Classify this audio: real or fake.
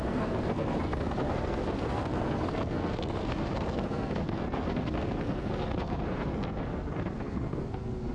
fake